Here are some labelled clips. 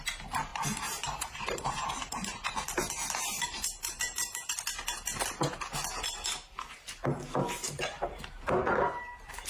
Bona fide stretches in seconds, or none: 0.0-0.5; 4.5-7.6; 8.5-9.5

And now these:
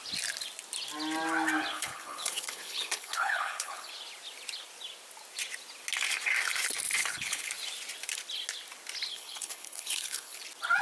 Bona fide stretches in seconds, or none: 0.0-1.7; 3.9-7.0; 7.5-9.1; 10.4-10.8

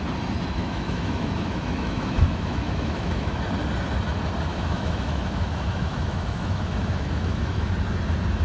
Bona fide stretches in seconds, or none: 0.0-0.6; 3.4-4.5; 7.7-8.4

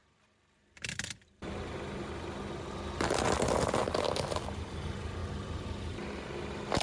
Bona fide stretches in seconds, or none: 5.2-6.8

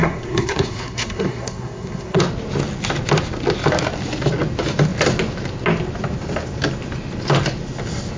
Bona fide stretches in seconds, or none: 2.2-8.2

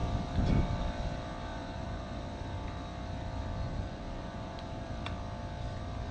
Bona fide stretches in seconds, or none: 0.0-1.5; 2.2-3.6; 4.9-6.1